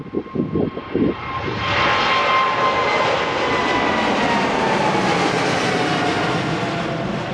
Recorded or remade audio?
recorded